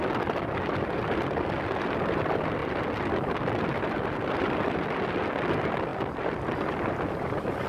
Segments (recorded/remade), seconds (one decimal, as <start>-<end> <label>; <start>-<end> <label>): 0.0-7.7 recorded